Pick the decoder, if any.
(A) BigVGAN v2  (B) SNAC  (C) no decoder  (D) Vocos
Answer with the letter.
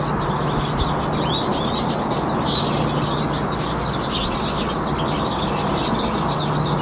C